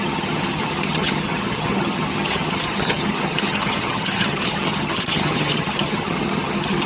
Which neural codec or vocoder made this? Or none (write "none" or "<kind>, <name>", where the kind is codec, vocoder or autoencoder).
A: vocoder, HiFi-GAN